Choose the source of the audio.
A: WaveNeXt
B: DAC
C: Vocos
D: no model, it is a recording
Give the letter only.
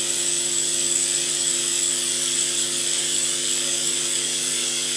B